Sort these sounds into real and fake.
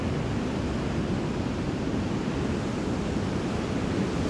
real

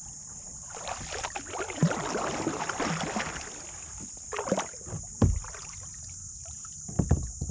real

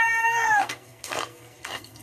fake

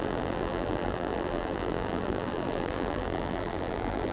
fake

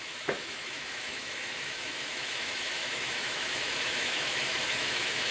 fake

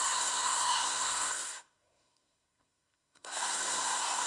fake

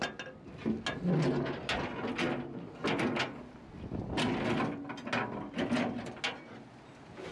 real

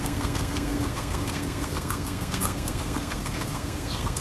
fake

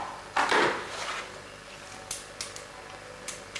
real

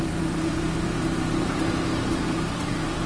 fake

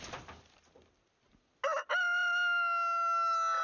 real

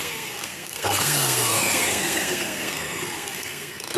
fake